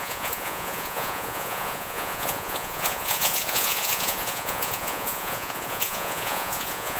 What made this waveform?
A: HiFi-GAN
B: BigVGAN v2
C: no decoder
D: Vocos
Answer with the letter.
D